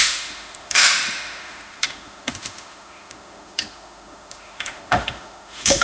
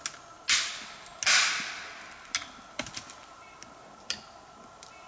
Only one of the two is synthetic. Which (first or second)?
first